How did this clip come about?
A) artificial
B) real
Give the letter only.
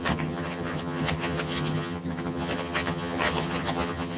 A